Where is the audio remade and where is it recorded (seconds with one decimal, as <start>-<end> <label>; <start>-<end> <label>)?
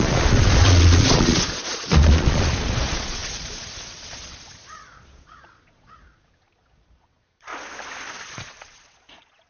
0.0-7.5 remade; 7.5-8.2 recorded; 8.2-9.5 remade